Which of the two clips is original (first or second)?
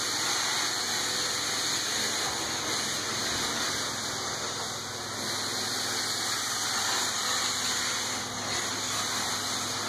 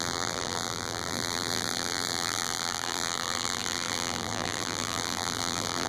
first